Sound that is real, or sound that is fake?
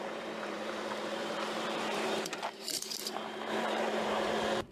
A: fake